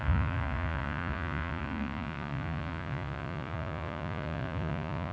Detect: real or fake fake